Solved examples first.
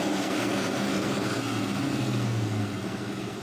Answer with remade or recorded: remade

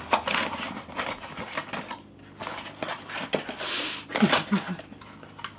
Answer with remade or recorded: recorded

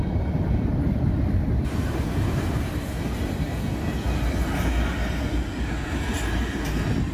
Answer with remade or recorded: recorded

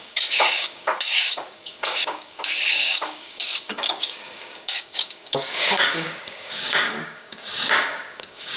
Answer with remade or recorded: remade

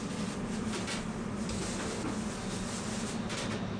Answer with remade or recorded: recorded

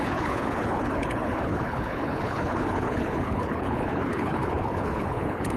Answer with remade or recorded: remade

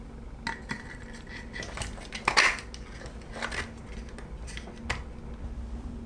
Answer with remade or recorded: recorded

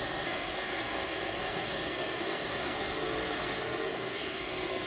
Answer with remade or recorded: remade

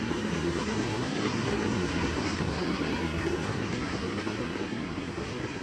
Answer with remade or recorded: remade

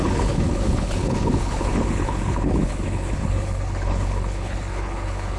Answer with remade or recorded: remade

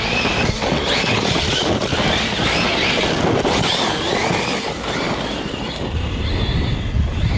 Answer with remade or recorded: recorded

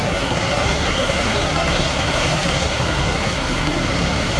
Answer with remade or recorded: remade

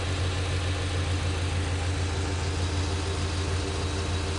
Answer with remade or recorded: recorded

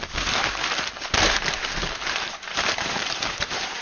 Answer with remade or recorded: remade